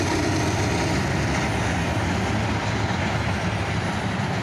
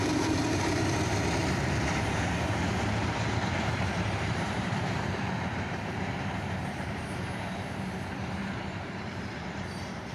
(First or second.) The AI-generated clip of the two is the second